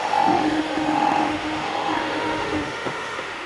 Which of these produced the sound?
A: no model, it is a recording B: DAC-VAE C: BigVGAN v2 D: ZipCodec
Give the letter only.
B